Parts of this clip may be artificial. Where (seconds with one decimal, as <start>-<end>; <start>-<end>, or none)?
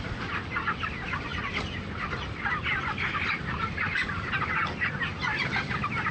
none